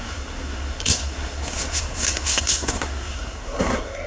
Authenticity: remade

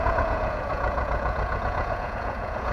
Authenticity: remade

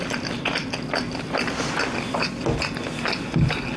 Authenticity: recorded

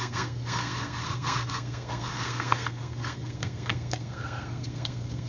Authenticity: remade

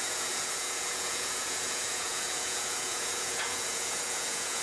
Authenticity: remade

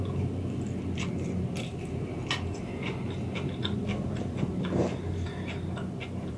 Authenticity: recorded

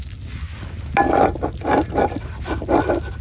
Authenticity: recorded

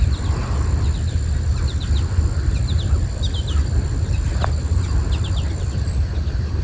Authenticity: recorded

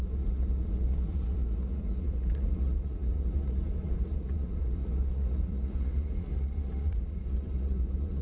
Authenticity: remade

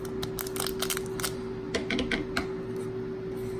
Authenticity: recorded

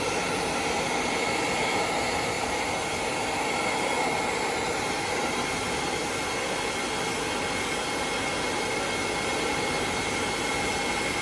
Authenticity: recorded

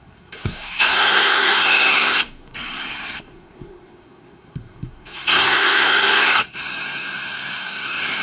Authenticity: remade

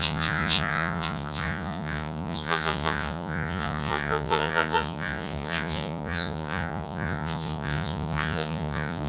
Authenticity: remade